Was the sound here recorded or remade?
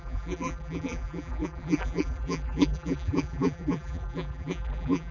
remade